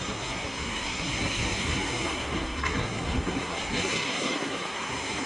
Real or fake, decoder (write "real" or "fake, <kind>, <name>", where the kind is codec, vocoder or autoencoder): fake, codec, SNAC